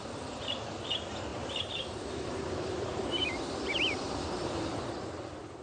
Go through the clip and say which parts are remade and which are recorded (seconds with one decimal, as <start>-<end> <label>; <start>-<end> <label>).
0.0-1.3 recorded; 1.3-4.7 remade; 4.7-5.6 recorded

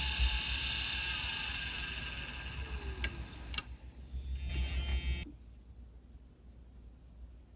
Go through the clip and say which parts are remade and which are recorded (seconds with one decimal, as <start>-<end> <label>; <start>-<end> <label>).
0.0-7.6 recorded

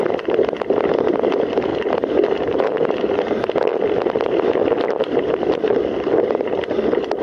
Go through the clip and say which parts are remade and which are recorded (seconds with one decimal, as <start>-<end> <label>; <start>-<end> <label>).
0.0-7.2 recorded

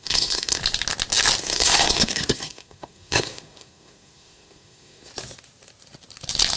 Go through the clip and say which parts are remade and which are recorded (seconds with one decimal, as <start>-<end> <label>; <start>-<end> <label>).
0.0-0.6 remade; 0.6-1.4 recorded; 1.4-5.1 remade; 5.1-6.6 recorded

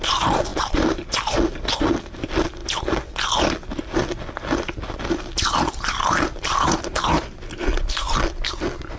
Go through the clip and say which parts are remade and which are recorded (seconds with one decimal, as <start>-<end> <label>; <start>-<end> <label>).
0.0-9.0 recorded